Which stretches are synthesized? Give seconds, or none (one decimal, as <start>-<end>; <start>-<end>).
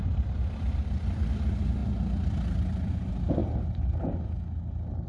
0.0-1.8; 2.9-3.4